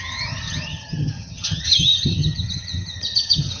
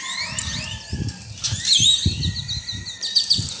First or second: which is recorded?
second